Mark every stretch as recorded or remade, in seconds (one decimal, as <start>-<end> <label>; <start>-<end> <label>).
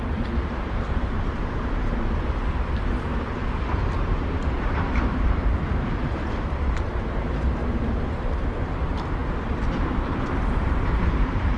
0.0-9.2 remade; 9.2-10.7 recorded; 10.7-11.6 remade